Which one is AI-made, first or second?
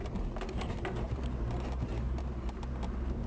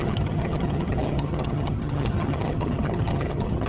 second